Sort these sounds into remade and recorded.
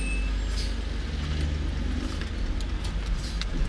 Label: recorded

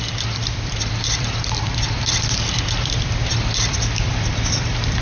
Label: remade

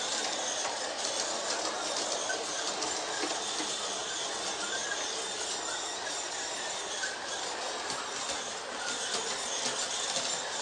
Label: recorded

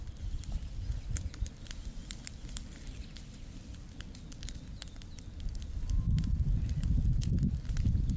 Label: remade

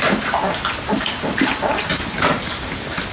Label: remade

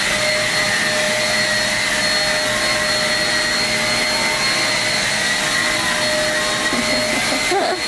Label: recorded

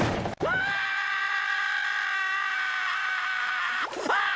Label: remade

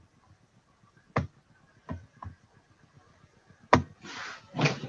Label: recorded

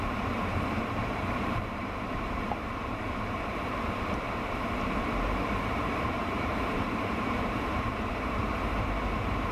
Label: remade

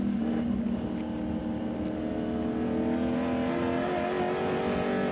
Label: recorded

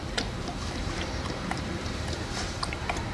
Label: remade